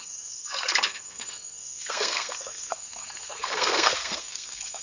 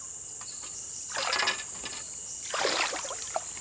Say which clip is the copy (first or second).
first